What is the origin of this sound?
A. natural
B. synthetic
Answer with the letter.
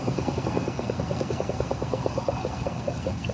B